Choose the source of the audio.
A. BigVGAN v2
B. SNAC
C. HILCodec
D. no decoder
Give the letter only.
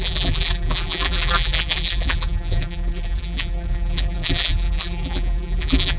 A